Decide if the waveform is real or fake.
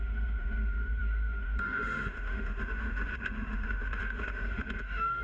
fake